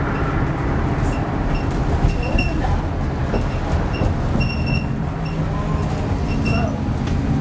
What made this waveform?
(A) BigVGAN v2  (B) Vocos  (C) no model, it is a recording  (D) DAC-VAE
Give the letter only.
C